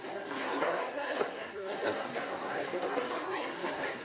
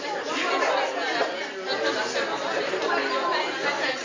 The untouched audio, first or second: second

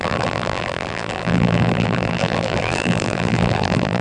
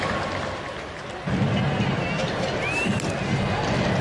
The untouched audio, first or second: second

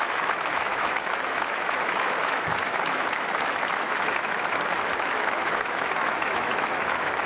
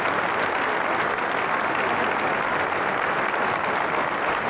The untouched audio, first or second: second